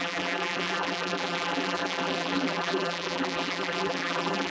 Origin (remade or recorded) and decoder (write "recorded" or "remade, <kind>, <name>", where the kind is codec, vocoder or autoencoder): remade, vocoder, BigVGAN v2